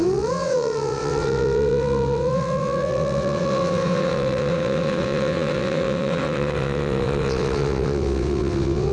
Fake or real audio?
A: fake